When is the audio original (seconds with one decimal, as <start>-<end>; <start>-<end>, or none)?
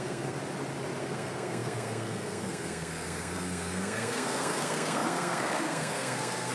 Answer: 0.4-1.0